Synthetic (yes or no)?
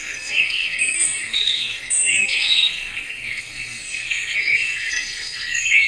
yes